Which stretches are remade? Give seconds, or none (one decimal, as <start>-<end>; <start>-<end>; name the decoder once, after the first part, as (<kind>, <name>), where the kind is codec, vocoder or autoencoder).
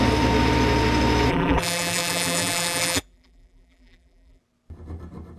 1.3-4.4 (vocoder, BigVGAN v2)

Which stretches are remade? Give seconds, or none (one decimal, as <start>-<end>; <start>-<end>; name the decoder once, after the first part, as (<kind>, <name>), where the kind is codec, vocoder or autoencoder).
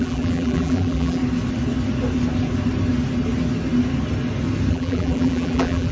0.0-1.2 (vocoder, BigVGAN v2); 4.7-5.9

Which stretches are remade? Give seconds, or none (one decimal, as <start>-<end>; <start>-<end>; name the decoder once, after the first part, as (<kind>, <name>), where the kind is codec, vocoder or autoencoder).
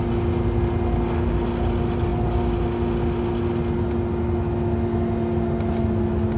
none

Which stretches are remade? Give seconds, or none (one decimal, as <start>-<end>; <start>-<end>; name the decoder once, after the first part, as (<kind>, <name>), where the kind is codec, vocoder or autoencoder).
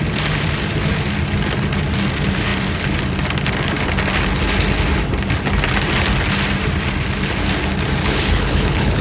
8.0-9.0 (codec, HILCodec)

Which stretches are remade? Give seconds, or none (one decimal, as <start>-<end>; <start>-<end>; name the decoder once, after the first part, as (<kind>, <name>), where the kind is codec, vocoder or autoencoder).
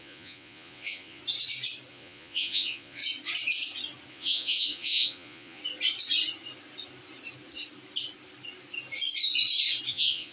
0.0-1.2 (vocoder, Vocos); 1.9-3.0; 4.1-5.6; 9.9-10.3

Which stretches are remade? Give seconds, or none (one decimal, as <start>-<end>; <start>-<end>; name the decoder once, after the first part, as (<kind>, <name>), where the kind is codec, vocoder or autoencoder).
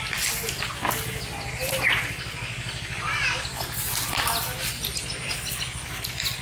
none